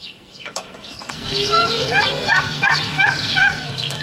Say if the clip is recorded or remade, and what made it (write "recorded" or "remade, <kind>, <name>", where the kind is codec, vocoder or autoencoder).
remade, codec, SNAC